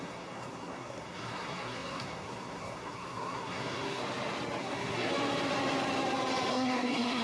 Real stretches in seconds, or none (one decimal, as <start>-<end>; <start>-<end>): 4.0-4.6; 5.1-6.5